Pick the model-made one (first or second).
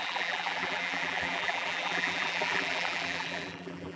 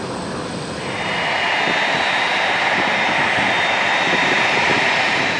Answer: first